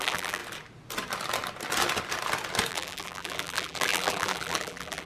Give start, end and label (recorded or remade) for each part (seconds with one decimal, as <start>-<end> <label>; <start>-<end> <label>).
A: 0.0-0.4 remade; 0.4-2.7 recorded; 2.7-5.1 remade